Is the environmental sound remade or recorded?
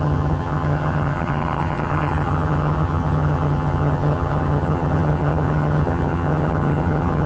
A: remade